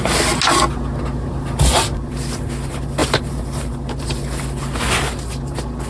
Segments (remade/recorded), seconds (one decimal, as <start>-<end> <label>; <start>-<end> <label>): 0.0-5.9 recorded